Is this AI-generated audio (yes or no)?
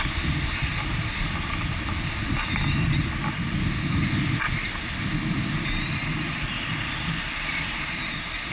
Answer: yes